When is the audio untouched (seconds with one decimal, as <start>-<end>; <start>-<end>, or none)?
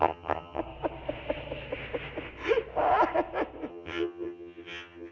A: 0.6-3.7